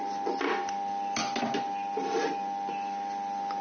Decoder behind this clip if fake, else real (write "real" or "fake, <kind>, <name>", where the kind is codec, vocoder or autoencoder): real